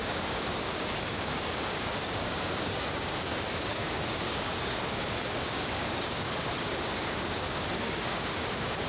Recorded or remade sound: remade